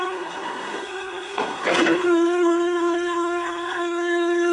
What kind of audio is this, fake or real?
fake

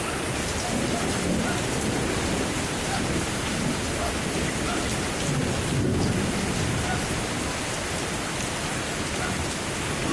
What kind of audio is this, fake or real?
real